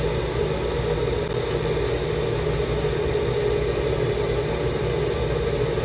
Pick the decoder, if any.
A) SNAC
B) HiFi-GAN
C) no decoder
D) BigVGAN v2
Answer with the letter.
C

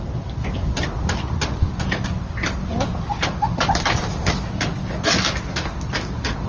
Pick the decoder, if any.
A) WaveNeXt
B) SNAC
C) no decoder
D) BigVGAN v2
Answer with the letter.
C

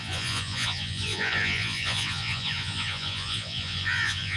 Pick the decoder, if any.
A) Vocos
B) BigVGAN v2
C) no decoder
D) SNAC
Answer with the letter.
A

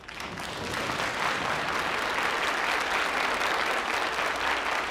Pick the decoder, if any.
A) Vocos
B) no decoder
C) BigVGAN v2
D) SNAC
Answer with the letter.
B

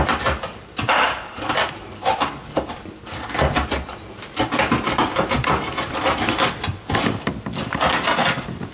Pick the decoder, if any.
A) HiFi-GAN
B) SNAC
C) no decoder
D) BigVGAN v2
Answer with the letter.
C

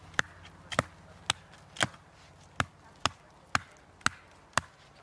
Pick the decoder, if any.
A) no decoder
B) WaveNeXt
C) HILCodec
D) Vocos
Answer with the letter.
A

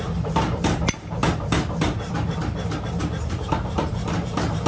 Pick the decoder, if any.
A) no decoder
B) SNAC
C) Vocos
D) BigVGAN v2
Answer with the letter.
D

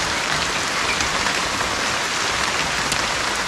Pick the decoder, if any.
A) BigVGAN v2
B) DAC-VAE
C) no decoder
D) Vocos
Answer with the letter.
C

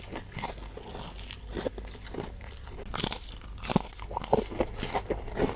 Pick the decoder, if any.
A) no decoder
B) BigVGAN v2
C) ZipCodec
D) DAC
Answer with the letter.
A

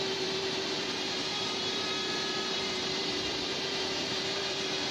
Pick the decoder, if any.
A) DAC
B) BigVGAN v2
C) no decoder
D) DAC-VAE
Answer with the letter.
B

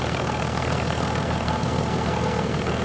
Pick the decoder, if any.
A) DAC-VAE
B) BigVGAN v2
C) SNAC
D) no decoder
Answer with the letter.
C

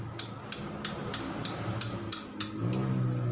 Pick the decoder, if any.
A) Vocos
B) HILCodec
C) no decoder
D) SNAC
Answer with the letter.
C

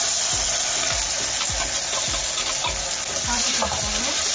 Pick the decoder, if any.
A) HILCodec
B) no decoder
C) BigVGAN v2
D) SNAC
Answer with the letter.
B